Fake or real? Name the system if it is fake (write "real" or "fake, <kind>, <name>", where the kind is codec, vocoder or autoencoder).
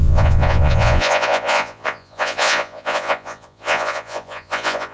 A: fake, vocoder, Vocos